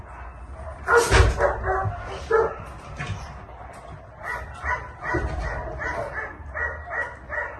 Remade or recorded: recorded